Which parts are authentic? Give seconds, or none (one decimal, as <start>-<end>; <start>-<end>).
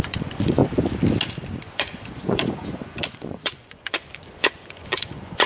0.6-1.6